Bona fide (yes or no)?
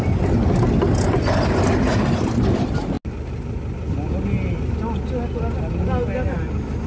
yes